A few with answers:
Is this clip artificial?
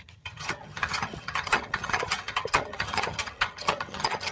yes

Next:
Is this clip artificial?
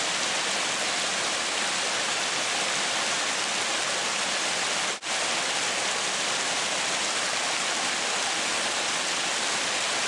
no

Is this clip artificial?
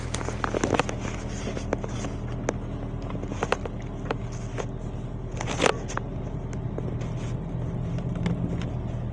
no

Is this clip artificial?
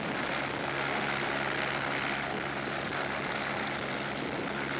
no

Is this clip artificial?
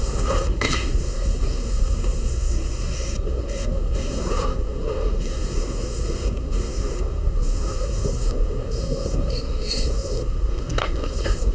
yes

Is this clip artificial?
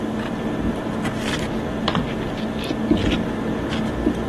no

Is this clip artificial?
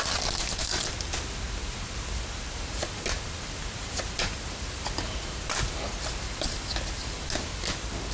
no